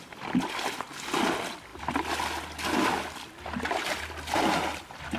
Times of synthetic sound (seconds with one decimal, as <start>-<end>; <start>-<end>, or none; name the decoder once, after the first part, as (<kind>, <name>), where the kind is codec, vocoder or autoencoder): none